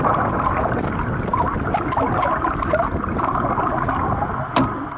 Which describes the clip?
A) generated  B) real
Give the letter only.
B